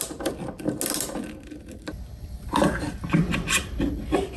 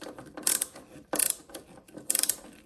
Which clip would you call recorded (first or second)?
first